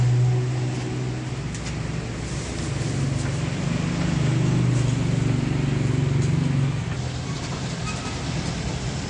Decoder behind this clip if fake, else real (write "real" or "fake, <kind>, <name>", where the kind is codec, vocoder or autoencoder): real